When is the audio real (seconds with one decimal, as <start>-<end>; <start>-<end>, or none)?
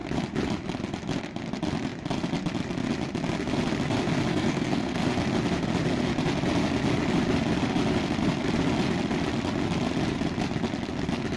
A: 0.0-4.3; 5.0-11.4